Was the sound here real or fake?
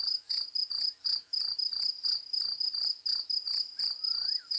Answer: real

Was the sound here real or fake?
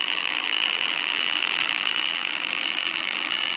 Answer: fake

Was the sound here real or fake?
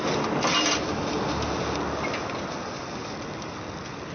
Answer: real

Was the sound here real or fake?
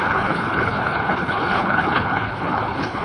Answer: fake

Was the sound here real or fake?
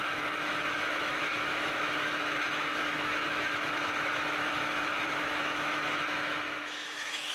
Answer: fake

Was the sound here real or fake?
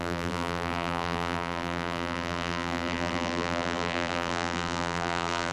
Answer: fake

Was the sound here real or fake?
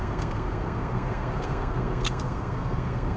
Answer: fake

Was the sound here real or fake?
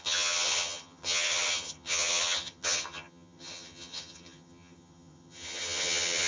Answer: fake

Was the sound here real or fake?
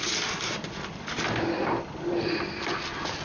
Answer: real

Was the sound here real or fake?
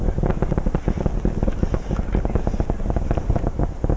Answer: real